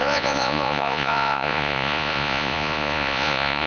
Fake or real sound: fake